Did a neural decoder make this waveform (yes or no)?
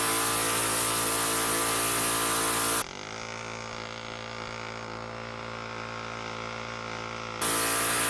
no